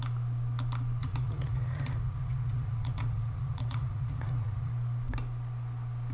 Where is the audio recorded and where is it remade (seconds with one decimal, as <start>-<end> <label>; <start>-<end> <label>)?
0.0-1.0 recorded; 1.0-4.7 remade; 4.7-6.1 recorded